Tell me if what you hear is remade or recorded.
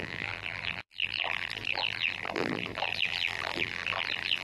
remade